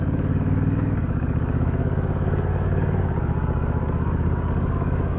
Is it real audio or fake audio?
fake